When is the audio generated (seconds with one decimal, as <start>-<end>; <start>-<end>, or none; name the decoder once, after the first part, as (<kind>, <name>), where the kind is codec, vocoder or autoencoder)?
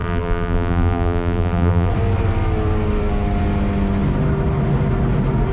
0.0-1.9 (vocoder, BigVGAN v2)